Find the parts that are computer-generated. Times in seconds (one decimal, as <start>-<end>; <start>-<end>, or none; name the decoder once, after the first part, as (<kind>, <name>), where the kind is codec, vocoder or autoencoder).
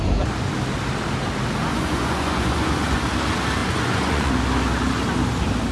1.7-3.0 (vocoder, Vocos); 3.6-4.3